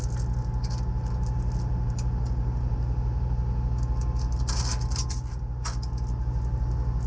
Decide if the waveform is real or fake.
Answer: real